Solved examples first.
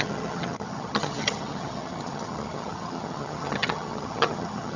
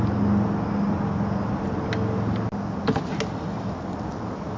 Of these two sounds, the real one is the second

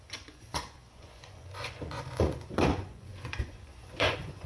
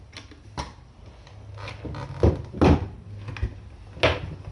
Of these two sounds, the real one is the second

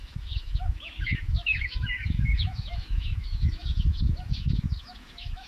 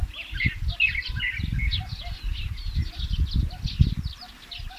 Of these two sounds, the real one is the second